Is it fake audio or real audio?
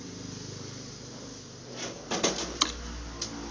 real